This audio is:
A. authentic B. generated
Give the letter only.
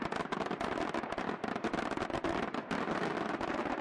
A